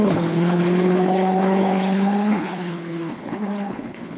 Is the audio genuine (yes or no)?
no